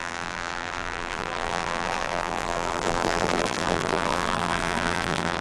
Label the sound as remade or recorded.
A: remade